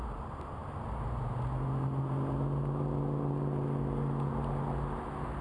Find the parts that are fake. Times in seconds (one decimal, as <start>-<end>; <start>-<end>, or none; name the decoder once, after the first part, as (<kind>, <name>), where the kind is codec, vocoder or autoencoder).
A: none